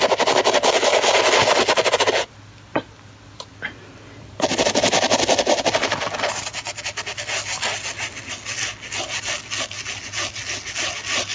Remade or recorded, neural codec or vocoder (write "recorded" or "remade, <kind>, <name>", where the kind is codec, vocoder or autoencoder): recorded